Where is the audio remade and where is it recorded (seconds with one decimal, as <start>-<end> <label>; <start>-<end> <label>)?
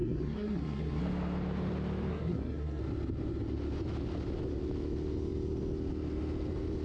0.0-1.0 remade; 1.0-2.1 recorded; 2.1-2.8 remade; 2.8-6.8 recorded